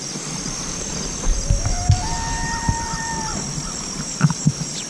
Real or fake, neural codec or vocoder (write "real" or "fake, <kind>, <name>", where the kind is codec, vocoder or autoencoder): fake, vocoder, BigVGAN v2